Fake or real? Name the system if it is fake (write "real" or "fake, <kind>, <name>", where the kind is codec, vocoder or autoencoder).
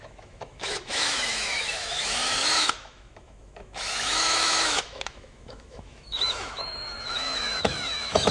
fake, autoencoder, DAC-VAE